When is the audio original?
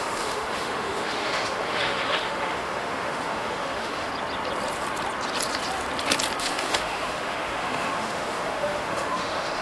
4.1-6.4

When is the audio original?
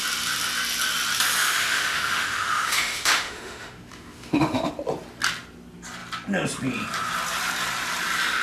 0.0-1.4; 4.7-8.4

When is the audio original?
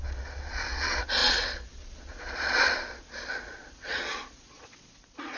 none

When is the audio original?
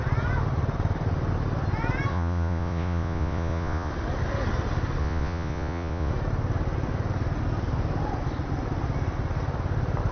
0.0-2.1; 3.9-5.0; 6.1-10.1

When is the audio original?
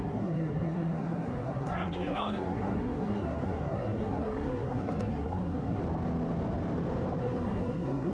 5.8-7.2